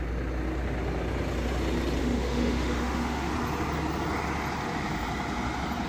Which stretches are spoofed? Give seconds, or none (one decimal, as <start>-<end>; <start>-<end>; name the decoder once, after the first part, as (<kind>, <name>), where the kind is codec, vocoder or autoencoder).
2.0-3.3 (autoencoder, DAC-VAE)